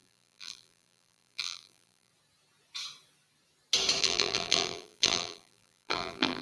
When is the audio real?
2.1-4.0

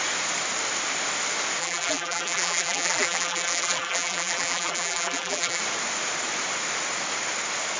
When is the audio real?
0.0-1.6; 5.6-7.8

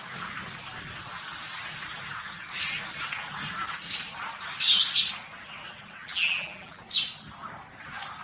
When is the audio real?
0.0-6.0; 6.8-8.2

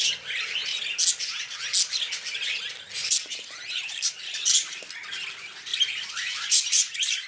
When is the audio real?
0.0-3.0; 4.8-5.7

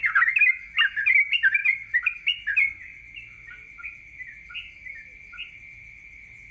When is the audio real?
0.0-6.5

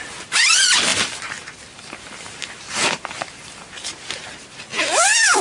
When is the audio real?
0.0-0.9; 4.1-5.4

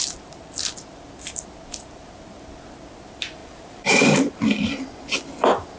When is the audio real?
0.0-3.4; 4.3-5.8